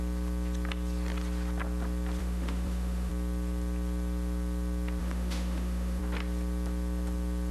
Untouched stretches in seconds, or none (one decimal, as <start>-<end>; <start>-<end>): 0.0-2.2; 3.1-5.0; 6.0-7.5